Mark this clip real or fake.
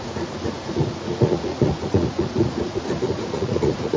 fake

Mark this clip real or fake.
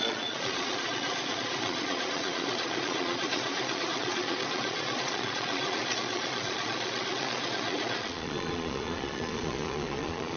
fake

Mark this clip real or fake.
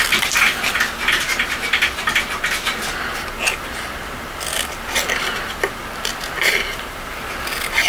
real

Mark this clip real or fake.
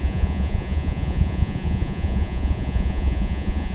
fake